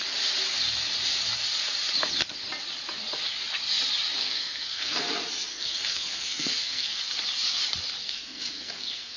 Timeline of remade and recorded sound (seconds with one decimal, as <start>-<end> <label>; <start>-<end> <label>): 0.0-4.2 recorded; 4.2-5.0 remade; 5.0-5.5 recorded; 5.5-7.0 remade; 7.0-8.0 recorded; 8.0-9.2 remade